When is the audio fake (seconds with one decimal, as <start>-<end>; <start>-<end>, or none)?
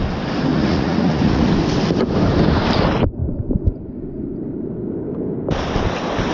0.5-1.5